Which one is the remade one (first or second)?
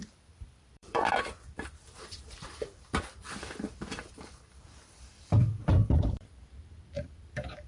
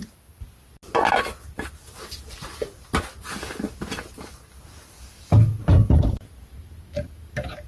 first